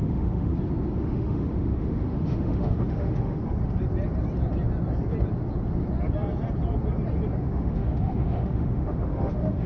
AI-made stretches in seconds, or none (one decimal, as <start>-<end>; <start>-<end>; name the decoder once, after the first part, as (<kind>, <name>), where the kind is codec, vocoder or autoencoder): 0.0-0.5 (autoencoder, DAC-VAE); 1.0-3.4; 7.4-9.7